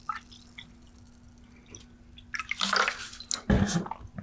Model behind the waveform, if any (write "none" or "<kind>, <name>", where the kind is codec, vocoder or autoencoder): none